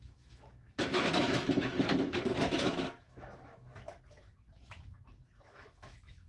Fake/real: fake